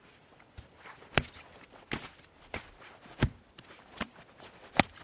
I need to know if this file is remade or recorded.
recorded